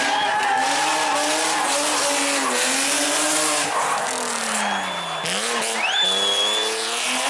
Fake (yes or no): no